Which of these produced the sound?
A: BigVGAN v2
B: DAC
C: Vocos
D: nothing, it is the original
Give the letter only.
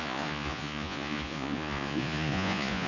C